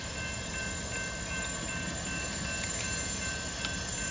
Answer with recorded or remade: recorded